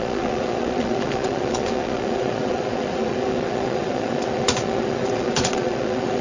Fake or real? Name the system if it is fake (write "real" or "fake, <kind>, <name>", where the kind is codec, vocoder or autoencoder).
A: fake, vocoder, Vocos